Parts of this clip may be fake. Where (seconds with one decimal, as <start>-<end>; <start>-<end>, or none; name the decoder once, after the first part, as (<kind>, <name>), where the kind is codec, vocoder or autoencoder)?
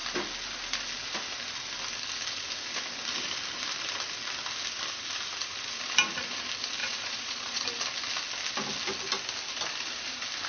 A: 6.8-7.6 (vocoder, Vocos)